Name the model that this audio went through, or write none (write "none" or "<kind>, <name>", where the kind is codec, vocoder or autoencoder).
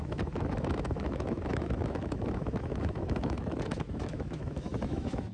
autoencoder, DAC-VAE